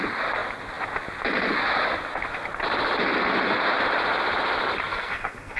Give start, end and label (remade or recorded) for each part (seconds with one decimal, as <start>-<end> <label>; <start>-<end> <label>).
0.0-4.9 recorded; 4.9-5.6 remade